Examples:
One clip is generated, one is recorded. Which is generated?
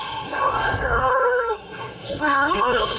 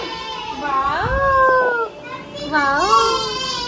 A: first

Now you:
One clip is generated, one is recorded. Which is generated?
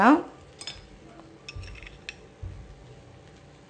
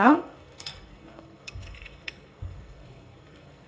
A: second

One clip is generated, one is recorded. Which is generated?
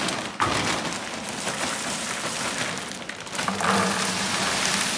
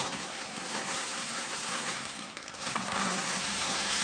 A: second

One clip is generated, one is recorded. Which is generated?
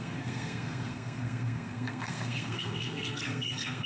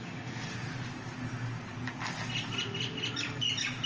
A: first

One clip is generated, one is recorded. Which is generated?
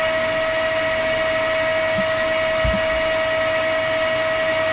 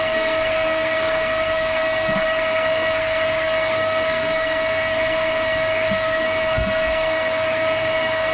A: second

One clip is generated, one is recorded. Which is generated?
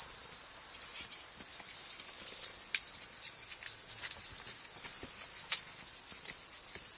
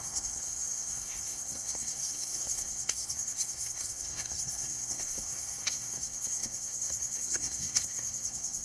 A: second